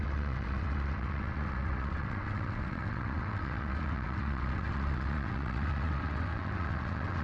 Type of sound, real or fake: fake